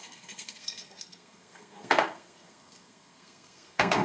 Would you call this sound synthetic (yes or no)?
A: yes